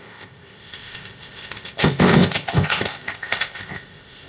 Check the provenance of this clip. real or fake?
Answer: fake